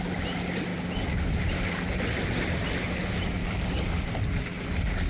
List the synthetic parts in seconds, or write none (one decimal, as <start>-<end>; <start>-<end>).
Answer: 3.4-4.4